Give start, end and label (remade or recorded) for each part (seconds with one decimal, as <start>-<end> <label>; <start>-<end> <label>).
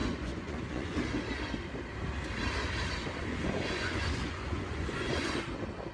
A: 0.0-1.0 remade; 1.0-3.2 recorded; 3.2-5.3 remade; 5.3-5.9 recorded